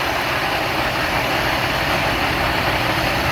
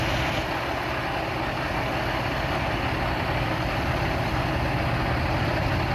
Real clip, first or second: second